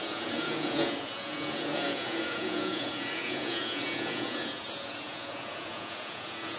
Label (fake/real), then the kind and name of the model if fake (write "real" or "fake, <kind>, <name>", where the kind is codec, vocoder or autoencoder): fake, vocoder, Vocos